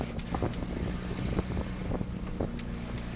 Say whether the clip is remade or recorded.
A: recorded